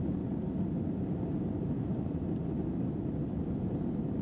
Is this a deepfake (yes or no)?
yes